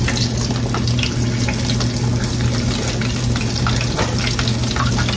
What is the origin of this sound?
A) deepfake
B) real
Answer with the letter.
B